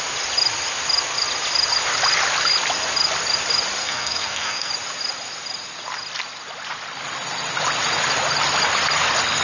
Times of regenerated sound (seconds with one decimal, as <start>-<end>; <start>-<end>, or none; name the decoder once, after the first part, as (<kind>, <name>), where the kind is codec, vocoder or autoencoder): 3.8-4.7 (codec, SNAC)

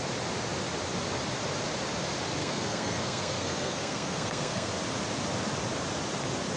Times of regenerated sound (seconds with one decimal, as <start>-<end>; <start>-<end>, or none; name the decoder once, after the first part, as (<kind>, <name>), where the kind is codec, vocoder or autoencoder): 2.4-4.7 (codec, SNAC)

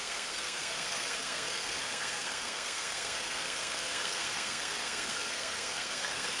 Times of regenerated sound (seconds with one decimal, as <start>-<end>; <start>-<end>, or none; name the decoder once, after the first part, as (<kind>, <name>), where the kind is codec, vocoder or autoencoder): 0.0-6.4 (codec, SNAC)

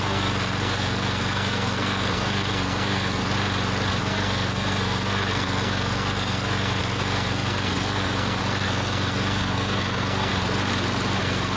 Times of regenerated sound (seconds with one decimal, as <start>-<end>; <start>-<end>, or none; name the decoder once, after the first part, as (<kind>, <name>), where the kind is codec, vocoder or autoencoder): 0.0-3.2 (codec, SNAC); 4.0-10.3; 11.2-11.6

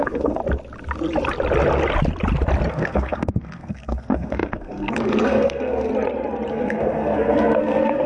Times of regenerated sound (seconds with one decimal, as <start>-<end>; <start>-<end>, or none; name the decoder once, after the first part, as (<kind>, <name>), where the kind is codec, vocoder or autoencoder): 0.0-0.4 (codec, SNAC); 2.7-5.9; 6.5-8.1

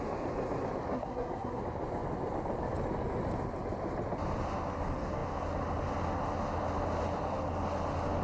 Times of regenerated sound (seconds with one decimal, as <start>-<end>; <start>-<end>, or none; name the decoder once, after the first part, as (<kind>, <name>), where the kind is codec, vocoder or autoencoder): 0.9-1.6 (codec, SNAC)

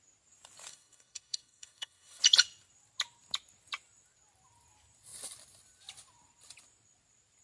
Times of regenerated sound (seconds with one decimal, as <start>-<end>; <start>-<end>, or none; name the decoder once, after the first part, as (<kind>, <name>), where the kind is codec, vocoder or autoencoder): 0.7-2.2 (codec, SNAC)

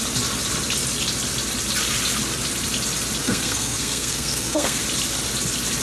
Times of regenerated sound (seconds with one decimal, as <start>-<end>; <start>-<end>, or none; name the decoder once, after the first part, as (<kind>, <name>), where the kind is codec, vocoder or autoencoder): 3.2-4.8 (codec, SNAC)